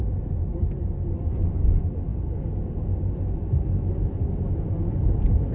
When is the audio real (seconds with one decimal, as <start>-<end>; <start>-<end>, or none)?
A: 0.0-5.5